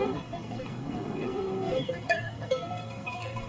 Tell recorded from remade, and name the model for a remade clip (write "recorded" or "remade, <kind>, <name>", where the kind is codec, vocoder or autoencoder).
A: remade, codec, SNAC